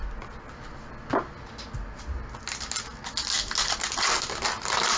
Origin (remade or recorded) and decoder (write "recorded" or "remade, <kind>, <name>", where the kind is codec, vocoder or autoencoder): recorded